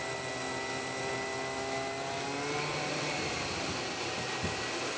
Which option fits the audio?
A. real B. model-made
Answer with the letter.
A